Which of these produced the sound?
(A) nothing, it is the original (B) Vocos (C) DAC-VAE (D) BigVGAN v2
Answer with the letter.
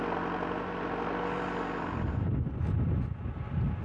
A